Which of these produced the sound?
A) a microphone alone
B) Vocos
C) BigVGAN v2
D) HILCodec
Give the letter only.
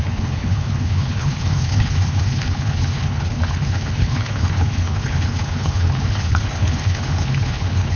D